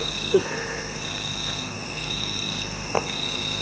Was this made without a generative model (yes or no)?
no